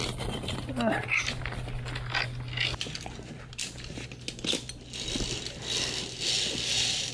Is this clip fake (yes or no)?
no